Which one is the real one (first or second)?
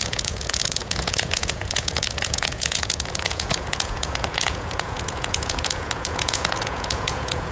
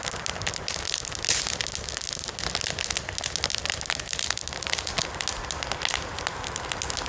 second